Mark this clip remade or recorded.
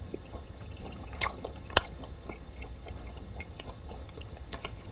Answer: remade